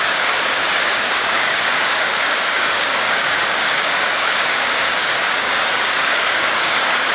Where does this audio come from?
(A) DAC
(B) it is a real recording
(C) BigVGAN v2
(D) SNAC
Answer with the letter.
A